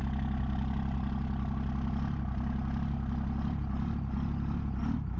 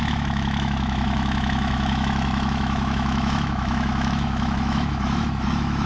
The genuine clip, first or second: first